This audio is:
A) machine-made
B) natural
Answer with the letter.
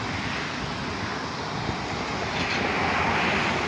B